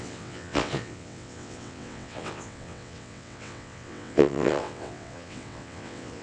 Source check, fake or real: fake